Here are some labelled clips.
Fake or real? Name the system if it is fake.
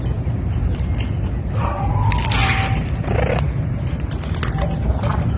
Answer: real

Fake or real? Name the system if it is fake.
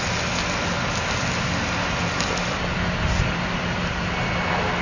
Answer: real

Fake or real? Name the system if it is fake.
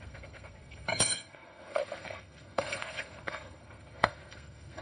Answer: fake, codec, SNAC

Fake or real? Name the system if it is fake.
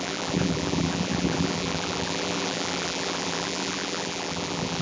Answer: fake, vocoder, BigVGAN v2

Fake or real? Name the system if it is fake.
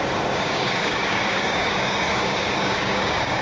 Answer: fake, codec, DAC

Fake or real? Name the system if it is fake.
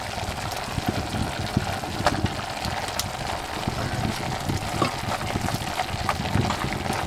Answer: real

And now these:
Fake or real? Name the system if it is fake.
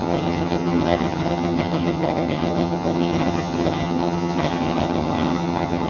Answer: fake, vocoder, HiFi-GAN